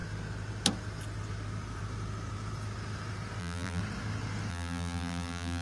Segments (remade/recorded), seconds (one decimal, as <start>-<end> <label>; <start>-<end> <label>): 0.0-3.4 recorded; 3.4-3.8 remade; 3.8-4.5 recorded; 4.5-5.6 remade